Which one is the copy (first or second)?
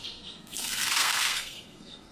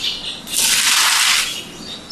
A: first